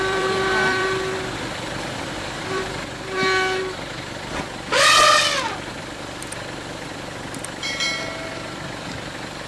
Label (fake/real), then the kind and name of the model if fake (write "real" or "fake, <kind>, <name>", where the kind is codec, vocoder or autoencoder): fake, vocoder, BigVGAN v2